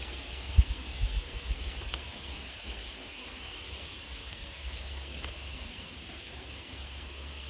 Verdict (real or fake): fake